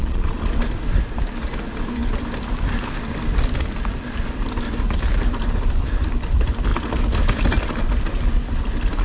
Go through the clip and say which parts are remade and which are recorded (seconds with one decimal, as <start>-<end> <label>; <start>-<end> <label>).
0.0-0.5 remade; 0.5-9.0 recorded